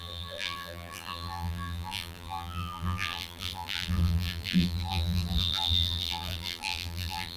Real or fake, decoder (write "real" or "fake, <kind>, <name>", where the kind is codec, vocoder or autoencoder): fake, vocoder, BigVGAN v2